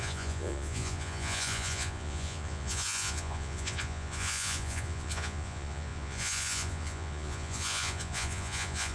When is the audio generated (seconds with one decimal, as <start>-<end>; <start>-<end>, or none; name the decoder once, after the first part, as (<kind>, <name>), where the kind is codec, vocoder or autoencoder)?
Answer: 0.0-8.9 (vocoder, Vocos)